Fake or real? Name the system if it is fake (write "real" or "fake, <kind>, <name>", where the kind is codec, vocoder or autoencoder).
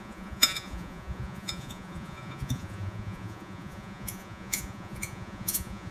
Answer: fake, vocoder, Vocos